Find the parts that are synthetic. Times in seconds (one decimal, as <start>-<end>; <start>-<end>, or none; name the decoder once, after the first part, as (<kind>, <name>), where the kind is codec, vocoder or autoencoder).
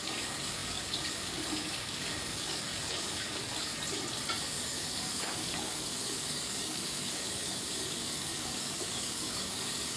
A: 0.0-3.7 (codec, DAC); 4.4-10.0